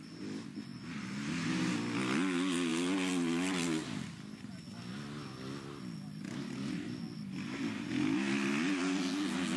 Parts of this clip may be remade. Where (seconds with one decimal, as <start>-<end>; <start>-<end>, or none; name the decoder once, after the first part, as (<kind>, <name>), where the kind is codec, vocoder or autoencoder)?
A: none